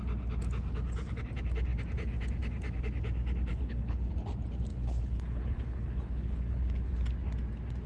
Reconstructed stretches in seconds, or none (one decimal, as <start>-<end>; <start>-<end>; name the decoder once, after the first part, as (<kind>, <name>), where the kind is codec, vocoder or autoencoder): 3.5-4.1 (codec, HILCodec); 4.7-6.9